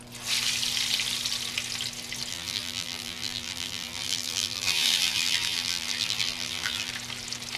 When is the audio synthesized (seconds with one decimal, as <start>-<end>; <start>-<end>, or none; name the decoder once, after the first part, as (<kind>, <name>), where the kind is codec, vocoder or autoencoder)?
2.3-6.9 (vocoder, BigVGAN v2)